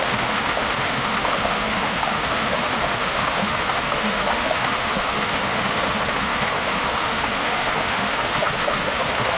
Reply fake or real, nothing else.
fake